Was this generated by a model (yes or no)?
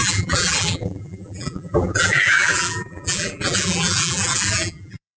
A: yes